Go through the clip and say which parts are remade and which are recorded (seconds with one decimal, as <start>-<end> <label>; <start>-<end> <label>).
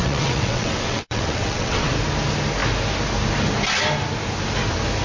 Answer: 0.0-1.9 remade; 1.9-5.0 recorded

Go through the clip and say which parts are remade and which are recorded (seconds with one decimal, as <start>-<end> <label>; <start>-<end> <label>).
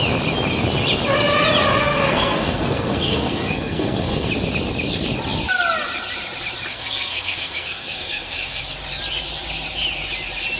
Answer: 0.0-1.8 recorded; 1.8-4.3 remade; 4.3-6.7 recorded; 6.7-8.6 remade; 8.6-10.6 recorded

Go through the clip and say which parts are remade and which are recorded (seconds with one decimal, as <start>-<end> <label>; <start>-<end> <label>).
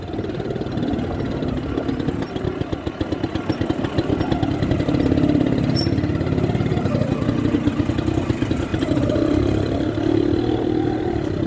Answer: 0.0-8.7 recorded; 8.7-10.0 remade; 10.0-11.5 recorded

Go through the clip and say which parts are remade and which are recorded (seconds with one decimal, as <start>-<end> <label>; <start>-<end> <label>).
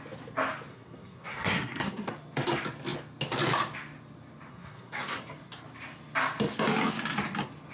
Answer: 0.0-0.7 recorded; 0.7-2.1 remade; 2.1-4.5 recorded; 4.5-5.2 remade; 5.2-7.7 recorded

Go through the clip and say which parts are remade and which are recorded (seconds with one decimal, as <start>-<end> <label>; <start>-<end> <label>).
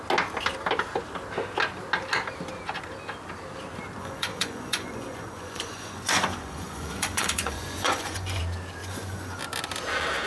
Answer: 0.0-4.0 recorded; 4.0-8.4 remade; 8.4-8.8 recorded; 8.8-9.4 remade; 9.4-10.3 recorded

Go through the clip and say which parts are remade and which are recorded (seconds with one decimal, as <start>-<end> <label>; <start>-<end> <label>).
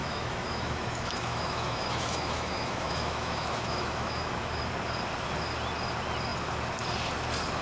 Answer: 0.0-4.6 remade; 4.6-7.6 recorded